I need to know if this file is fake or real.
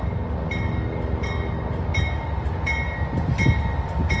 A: real